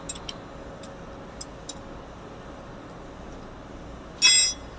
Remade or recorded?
recorded